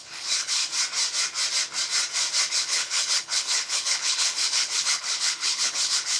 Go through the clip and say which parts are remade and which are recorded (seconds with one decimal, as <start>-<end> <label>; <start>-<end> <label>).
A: 0.0-0.6 remade; 0.6-2.5 recorded; 2.5-6.2 remade